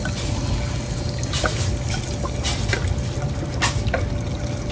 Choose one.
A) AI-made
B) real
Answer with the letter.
B